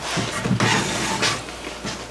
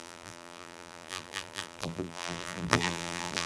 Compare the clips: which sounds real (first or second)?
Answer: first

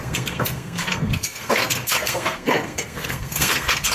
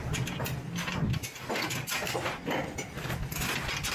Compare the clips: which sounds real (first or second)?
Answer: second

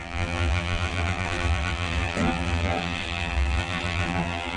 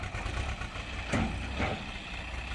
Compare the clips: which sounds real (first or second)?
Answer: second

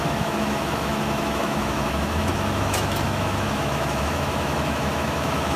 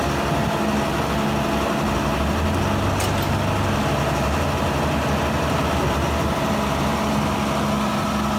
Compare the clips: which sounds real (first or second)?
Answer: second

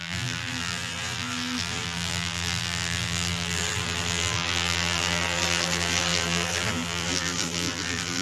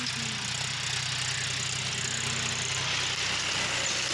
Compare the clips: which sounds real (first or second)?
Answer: second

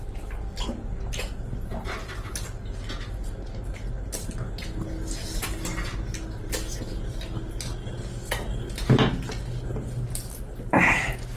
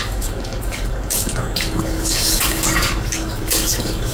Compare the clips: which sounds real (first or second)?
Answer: first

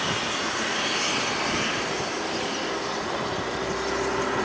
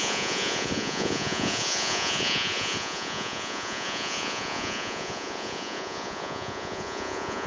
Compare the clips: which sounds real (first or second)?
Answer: first